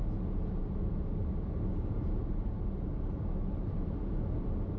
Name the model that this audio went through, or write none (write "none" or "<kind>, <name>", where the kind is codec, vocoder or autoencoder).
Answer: none